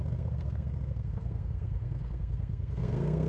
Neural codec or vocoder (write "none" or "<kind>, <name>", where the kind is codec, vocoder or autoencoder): codec, SNAC